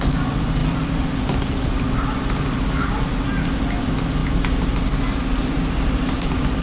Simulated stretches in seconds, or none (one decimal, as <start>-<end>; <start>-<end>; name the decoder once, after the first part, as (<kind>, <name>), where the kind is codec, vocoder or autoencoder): 0.0-4.2 (vocoder, BigVGAN v2); 5.5-6.6